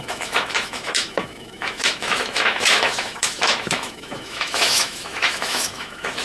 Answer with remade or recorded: remade